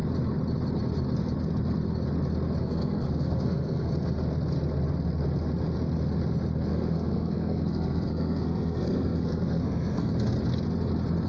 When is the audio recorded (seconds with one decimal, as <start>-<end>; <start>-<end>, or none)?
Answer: 0.0-2.6; 3.9-6.7; 10.1-11.3

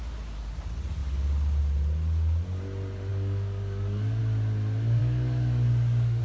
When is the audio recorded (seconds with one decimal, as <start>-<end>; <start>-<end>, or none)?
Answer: 0.0-3.1; 4.2-5.0

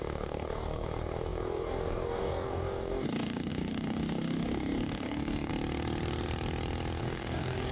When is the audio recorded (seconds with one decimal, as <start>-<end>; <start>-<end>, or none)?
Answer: 5.5-7.0

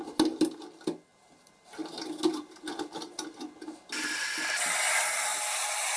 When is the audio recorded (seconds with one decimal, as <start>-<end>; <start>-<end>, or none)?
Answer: 0.0-6.0